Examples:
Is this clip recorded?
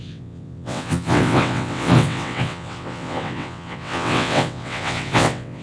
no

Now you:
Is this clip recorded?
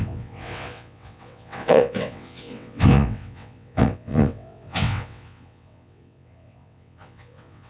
no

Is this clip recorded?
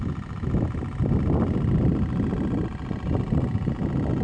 yes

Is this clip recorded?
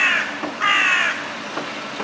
yes